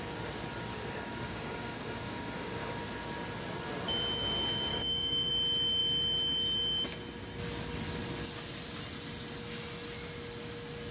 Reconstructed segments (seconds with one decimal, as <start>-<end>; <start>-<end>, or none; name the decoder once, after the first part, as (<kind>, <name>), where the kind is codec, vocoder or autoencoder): 0.7-2.8 (codec, DAC); 4.7-5.3